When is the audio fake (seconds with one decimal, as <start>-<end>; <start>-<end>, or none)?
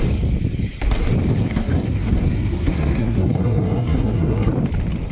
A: 1.4-4.5